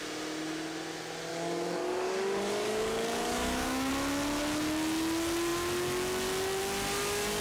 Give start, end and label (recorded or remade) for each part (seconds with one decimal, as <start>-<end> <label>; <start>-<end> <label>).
0.0-1.3 recorded; 1.3-3.9 remade; 3.9-7.4 recorded